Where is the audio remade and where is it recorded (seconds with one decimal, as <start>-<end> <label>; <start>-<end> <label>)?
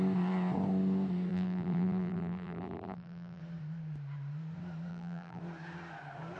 0.0-1.3 recorded; 1.3-3.4 remade; 3.4-4.9 recorded; 4.9-5.4 remade; 5.4-6.4 recorded